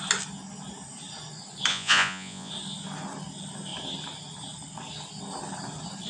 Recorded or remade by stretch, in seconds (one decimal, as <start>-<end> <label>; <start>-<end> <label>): 0.0-1.7 recorded; 1.7-2.5 remade; 2.5-6.1 recorded